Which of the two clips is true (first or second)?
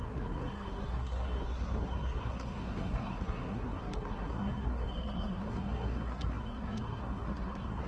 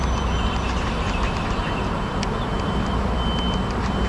second